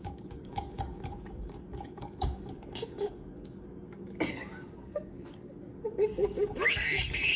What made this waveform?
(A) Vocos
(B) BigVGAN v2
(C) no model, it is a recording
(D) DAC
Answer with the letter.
D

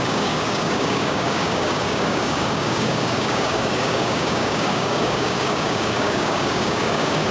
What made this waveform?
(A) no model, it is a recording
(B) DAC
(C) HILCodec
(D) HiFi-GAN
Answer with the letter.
B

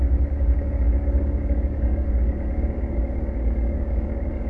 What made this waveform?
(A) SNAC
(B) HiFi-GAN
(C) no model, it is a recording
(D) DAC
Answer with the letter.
D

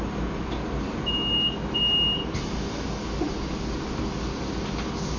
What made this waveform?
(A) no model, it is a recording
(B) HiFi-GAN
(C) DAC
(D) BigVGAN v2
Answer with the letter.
A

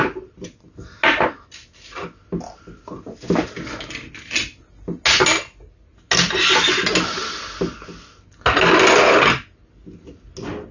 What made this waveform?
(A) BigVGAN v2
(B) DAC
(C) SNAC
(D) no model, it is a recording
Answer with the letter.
D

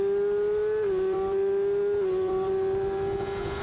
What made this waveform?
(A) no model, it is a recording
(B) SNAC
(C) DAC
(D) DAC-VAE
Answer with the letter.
A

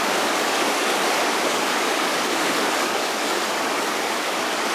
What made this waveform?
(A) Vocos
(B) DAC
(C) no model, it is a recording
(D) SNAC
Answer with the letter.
B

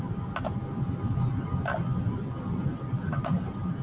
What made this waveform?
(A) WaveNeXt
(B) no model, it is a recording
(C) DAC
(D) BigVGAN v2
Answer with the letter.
B